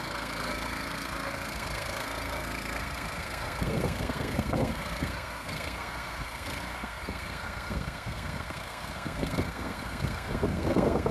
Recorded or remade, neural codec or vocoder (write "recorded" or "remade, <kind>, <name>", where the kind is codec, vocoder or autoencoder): remade, codec, SNAC